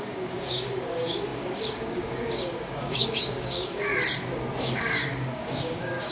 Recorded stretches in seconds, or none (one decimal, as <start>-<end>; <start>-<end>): 3.9-4.6